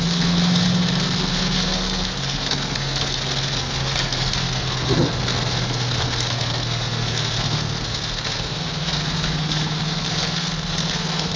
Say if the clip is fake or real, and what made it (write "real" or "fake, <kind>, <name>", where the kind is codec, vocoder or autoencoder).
fake, codec, SNAC